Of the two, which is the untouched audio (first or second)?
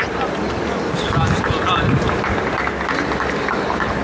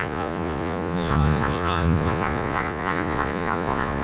first